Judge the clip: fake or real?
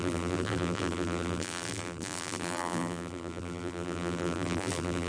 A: fake